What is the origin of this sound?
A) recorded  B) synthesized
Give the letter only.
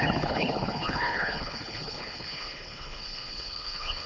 B